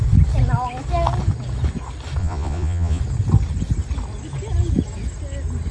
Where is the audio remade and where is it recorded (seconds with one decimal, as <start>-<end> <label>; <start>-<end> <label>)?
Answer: 0.0-2.2 recorded; 2.2-3.0 remade; 3.0-5.7 recorded

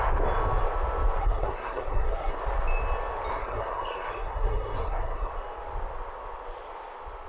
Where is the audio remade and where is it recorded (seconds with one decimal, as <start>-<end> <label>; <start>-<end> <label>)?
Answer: 0.0-1.2 recorded; 1.2-2.4 remade; 2.4-3.3 recorded; 3.3-5.3 remade; 5.3-7.3 recorded

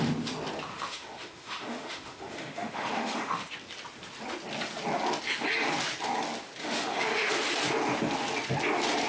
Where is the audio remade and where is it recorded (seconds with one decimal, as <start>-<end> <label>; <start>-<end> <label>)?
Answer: 0.0-0.7 recorded; 0.7-3.5 remade; 3.5-6.6 recorded; 6.6-7.3 remade; 7.3-9.1 recorded

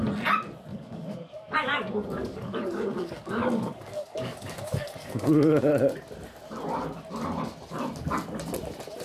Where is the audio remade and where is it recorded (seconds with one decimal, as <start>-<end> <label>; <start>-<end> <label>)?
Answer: 0.0-0.7 recorded; 0.7-5.7 remade; 5.7-9.0 recorded

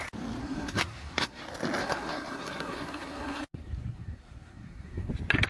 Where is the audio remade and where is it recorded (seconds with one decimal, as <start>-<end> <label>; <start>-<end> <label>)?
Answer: 0.0-0.4 recorded; 0.4-1.4 remade; 1.4-1.8 recorded; 1.8-5.1 remade; 5.1-5.5 recorded

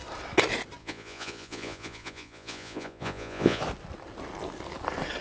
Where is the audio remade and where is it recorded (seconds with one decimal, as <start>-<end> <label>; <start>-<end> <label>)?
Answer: 0.0-0.8 recorded; 0.8-3.6 remade; 3.6-5.2 recorded